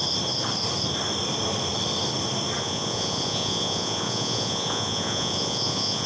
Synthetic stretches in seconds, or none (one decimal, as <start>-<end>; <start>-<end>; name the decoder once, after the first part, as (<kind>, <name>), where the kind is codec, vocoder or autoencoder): 2.6-6.1 (vocoder, Vocos)